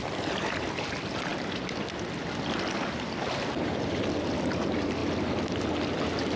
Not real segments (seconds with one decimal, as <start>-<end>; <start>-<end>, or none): none